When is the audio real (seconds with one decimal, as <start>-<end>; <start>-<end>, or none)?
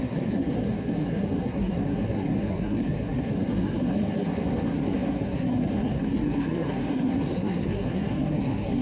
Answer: none